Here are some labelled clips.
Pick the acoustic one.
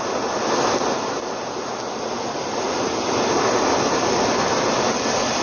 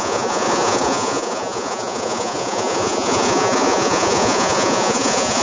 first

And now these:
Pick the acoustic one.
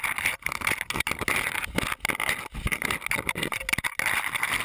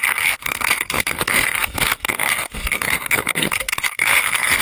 first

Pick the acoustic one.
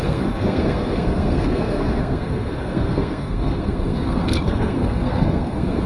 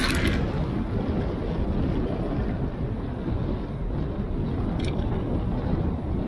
second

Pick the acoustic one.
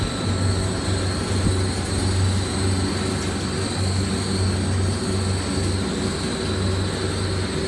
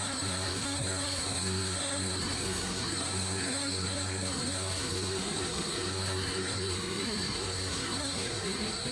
first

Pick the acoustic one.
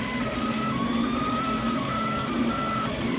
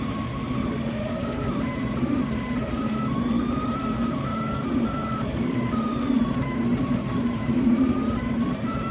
first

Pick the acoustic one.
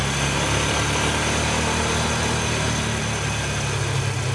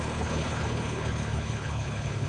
first